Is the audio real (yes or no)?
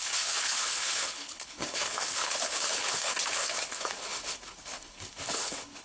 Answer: no